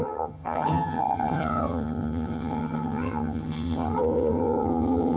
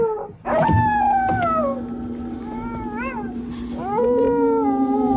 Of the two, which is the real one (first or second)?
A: second